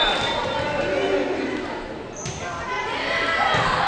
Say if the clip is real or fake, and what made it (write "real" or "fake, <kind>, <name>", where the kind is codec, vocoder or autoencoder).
real